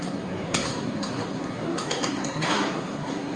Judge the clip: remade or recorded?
remade